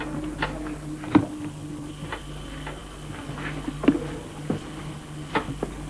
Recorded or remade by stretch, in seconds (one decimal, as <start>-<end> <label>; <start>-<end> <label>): 0.0-5.9 recorded

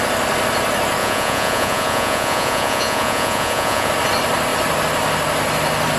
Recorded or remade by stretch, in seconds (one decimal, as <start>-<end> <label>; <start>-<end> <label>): 0.0-1.0 recorded; 1.0-3.9 remade; 3.9-6.0 recorded

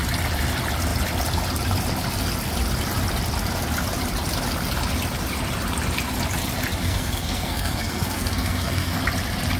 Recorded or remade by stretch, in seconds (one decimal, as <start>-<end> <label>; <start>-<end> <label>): 0.0-6.8 recorded; 6.8-9.0 remade; 9.0-9.6 recorded

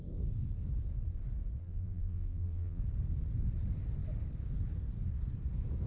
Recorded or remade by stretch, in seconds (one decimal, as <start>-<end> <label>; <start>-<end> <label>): 0.0-1.6 recorded; 1.6-2.8 remade; 2.8-5.9 recorded

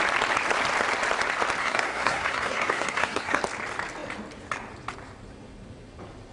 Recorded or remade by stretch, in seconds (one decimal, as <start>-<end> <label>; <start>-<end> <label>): 0.0-1.6 recorded; 1.6-3.4 remade; 3.4-6.3 recorded

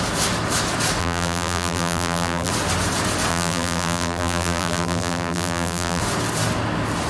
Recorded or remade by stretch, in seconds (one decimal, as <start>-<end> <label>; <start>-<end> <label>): 0.0-1.0 recorded; 1.0-2.5 remade; 2.5-3.3 recorded; 3.3-6.0 remade; 6.0-7.1 recorded

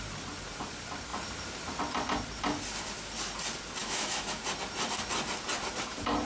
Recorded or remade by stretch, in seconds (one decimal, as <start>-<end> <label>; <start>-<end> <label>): 0.0-3.8 recorded; 3.8-4.4 remade; 4.4-6.2 recorded